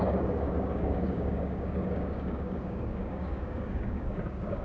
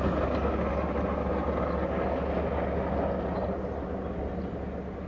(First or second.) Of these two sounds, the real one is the second